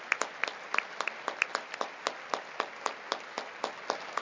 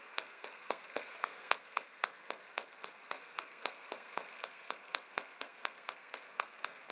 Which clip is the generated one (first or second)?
second